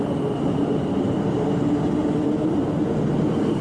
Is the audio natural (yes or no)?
no